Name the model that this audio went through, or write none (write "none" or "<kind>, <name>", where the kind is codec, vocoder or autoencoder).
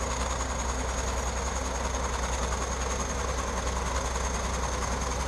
none